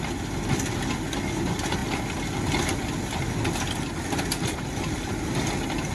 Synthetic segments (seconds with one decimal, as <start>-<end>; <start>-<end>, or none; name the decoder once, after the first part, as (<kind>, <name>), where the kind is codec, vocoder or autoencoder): none